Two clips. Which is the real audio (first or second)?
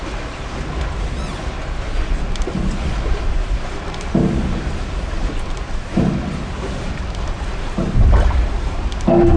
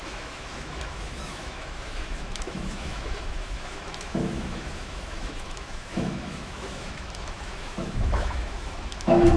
first